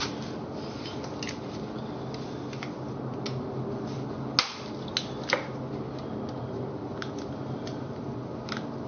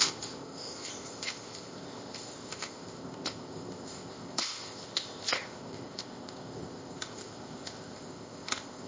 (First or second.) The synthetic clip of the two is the second